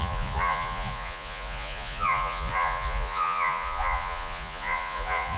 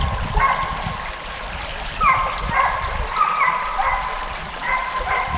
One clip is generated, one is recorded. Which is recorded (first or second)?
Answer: second